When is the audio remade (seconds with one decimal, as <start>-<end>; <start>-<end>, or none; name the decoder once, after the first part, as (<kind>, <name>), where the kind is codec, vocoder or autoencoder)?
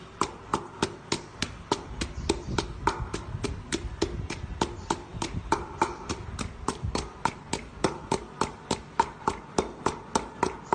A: none